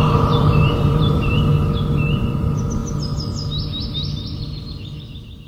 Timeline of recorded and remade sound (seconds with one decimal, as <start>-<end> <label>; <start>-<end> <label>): 0.0-1.5 remade; 1.5-2.1 recorded; 2.1-2.8 remade; 2.8-5.5 recorded